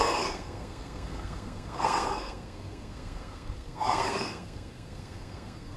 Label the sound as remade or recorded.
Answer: remade